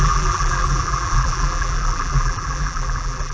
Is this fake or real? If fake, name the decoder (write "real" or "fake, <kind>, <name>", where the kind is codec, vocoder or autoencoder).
fake, vocoder, BigVGAN v2